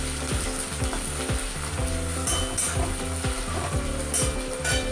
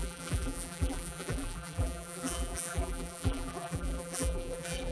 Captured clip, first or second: first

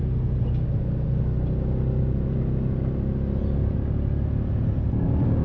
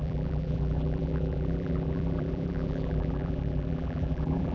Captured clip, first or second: first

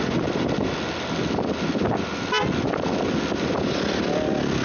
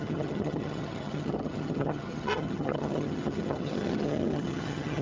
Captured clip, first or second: first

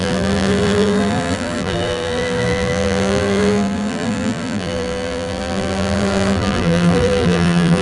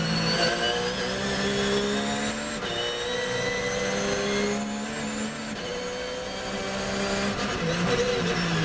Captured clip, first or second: second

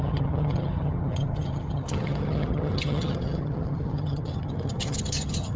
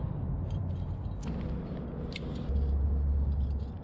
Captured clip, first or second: second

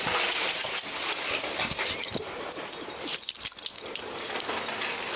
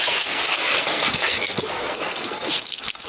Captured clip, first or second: first